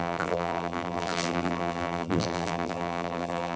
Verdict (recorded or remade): remade